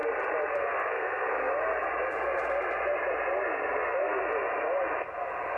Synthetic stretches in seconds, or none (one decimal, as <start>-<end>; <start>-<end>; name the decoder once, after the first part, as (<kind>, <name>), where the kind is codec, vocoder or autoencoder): 0.5-1.5 (codec, SNAC); 3.8-4.2